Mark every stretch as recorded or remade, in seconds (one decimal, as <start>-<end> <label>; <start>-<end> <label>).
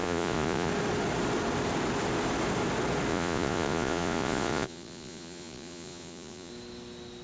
0.0-0.7 remade; 0.7-3.1 recorded; 3.1-6.5 remade; 6.5-7.2 recorded